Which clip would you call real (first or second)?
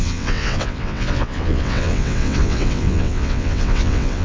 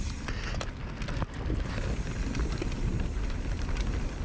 second